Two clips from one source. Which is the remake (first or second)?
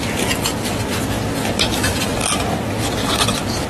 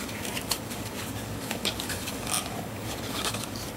second